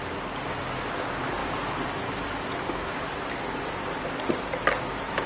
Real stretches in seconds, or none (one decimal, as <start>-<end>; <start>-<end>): 0.0-5.3